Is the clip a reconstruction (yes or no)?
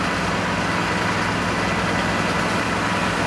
no